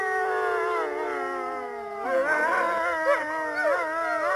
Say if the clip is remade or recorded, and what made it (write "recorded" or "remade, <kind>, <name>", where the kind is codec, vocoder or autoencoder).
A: recorded